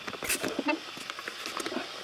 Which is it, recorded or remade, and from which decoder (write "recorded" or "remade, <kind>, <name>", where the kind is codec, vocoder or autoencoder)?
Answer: recorded